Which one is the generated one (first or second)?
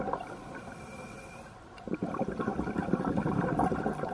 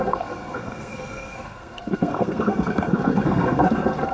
second